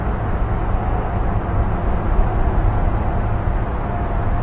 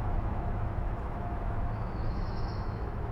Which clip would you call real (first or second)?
first